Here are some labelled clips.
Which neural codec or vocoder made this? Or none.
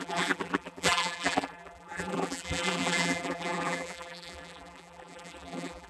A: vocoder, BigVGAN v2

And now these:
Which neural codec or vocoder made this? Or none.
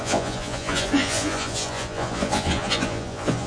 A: vocoder, Vocos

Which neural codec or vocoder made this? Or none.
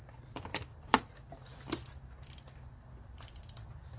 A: vocoder, BigVGAN v2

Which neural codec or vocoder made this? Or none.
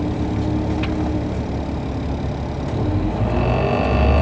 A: none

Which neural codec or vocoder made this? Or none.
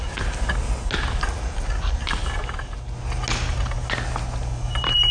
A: none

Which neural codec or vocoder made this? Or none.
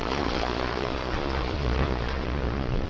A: vocoder, Vocos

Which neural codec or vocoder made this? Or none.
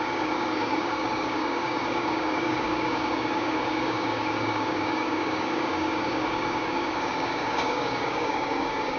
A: codec, DAC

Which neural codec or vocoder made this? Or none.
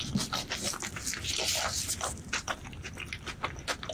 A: none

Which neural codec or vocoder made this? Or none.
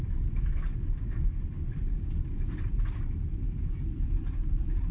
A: none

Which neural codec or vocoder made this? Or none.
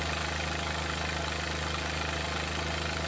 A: none